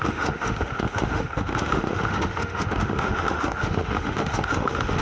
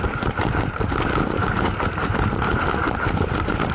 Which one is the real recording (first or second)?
second